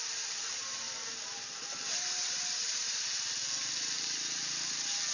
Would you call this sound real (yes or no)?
yes